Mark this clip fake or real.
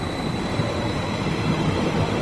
fake